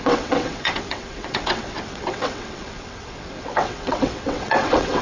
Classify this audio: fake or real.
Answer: fake